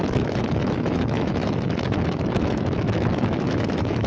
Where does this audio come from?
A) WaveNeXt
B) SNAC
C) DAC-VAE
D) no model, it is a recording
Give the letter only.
C